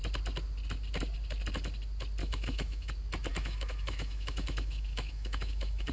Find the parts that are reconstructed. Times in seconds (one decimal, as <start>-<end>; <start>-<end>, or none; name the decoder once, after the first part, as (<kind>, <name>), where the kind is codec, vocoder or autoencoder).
2.2-2.9 (autoencoder, DAC-VAE); 3.3-5.9